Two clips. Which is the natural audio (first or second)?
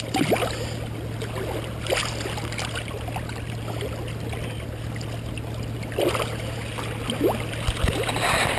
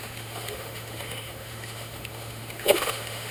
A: first